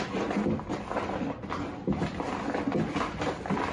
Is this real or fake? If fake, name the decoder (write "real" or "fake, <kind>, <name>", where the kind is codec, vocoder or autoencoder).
real